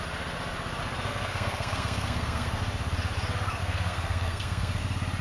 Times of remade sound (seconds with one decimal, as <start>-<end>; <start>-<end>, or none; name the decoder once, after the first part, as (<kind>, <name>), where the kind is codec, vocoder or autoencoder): 1.1-2.6 (codec, SNAC); 3.6-4.8